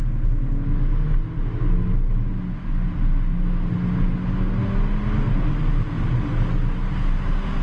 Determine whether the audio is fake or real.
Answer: real